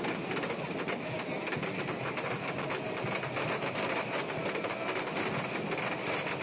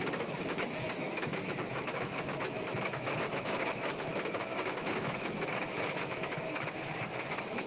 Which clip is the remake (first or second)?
second